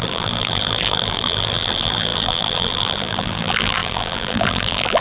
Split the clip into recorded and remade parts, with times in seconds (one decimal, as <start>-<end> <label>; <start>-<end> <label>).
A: 0.0-5.0 remade